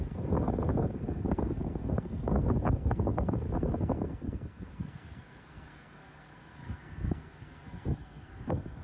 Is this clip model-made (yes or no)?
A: yes